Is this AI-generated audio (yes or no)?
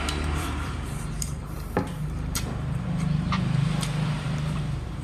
yes